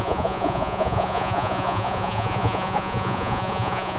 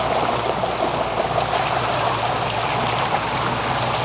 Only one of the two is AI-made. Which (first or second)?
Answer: first